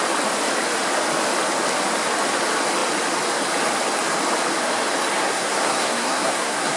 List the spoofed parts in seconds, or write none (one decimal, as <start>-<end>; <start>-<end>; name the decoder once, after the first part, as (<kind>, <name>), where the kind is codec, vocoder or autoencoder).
5.1-6.8 (codec, SNAC)